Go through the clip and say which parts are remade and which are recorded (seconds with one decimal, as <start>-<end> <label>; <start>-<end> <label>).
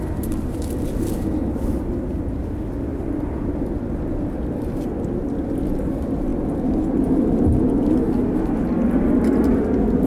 0.0-10.1 recorded